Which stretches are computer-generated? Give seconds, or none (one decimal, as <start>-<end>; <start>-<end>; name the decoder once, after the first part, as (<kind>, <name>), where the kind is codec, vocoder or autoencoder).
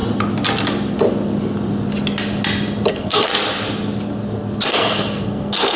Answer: 2.9-3.3 (codec, SNAC); 4.7-5.8